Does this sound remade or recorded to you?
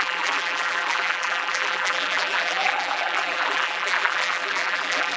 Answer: remade